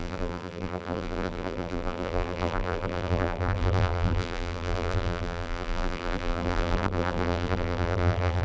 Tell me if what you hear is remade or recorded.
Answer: remade